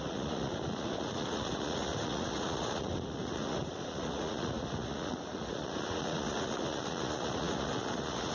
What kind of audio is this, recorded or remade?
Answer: remade